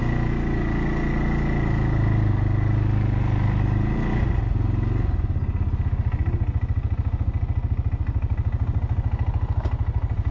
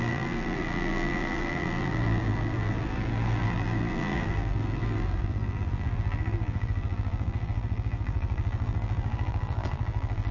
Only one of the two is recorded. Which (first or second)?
first